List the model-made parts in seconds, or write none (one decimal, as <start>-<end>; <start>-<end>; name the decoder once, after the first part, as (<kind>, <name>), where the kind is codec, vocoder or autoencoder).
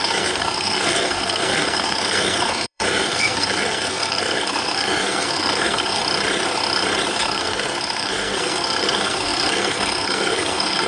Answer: 0.0-6.0 (codec, SNAC); 7.1-10.9